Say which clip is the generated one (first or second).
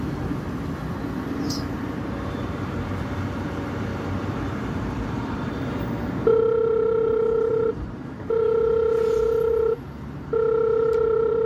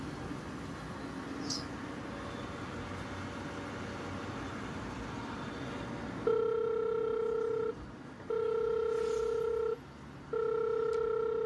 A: first